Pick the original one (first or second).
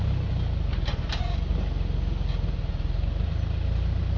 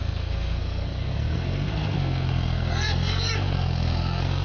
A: first